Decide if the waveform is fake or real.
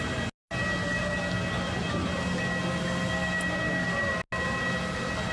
real